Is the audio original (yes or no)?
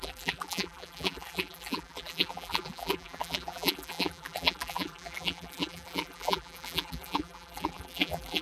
no